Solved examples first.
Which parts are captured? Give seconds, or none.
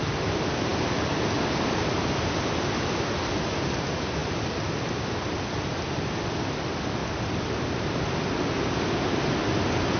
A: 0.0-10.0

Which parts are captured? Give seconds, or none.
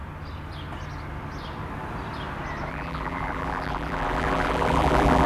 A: 0.0-2.7